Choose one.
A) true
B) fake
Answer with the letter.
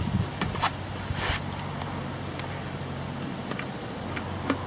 A